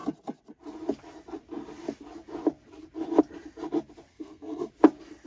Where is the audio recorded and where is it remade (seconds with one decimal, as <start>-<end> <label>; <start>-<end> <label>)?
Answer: 0.0-4.1 recorded; 4.1-4.7 remade; 4.7-5.3 recorded